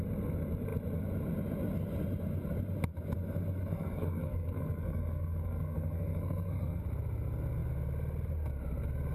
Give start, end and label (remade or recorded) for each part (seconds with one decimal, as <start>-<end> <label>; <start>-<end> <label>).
0.0-3.6 recorded; 3.6-6.8 remade; 6.8-9.1 recorded